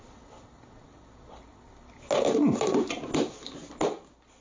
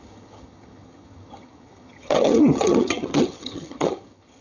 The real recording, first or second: first